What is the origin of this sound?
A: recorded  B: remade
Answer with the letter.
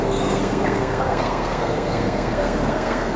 B